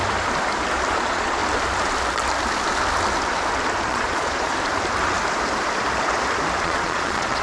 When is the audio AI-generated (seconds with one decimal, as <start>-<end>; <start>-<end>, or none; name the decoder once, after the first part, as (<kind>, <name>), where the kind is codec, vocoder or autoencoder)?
0.9-1.4 (vocoder, Vocos); 3.8-4.5; 6.6-7.4